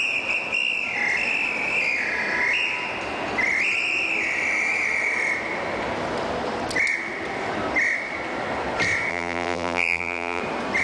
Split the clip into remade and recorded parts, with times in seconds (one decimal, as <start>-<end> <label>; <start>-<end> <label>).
0.0-9.1 recorded; 9.1-10.4 remade; 10.4-10.8 recorded